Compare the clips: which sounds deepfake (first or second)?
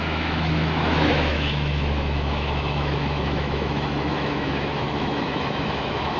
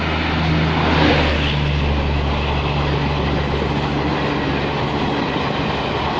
first